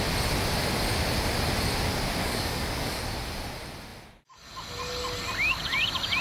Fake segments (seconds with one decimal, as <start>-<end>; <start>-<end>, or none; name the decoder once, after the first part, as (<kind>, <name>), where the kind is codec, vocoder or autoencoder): 2.2-3.0 (codec, DAC)